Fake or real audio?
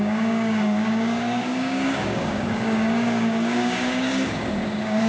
fake